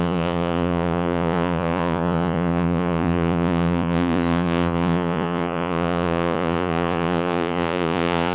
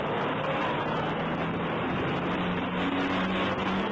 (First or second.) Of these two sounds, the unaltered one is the second